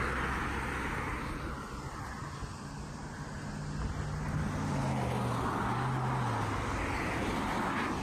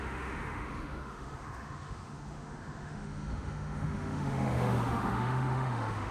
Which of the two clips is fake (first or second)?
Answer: second